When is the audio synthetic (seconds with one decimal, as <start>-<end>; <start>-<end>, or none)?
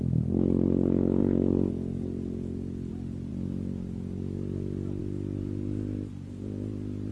none